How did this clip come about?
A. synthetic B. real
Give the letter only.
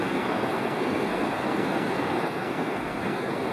A